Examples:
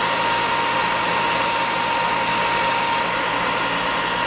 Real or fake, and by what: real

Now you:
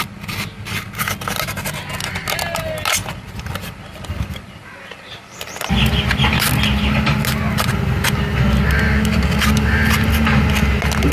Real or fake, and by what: real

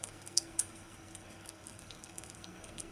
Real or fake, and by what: fake, codec, SNAC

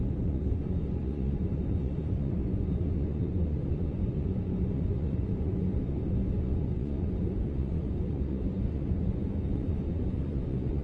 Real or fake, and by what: fake, vocoder, Vocos